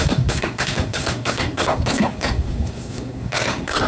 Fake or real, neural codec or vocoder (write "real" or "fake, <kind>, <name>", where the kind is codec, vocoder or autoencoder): fake, codec, SNAC